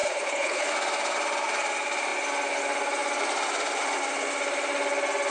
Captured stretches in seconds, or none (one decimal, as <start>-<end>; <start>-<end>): 0.7-5.3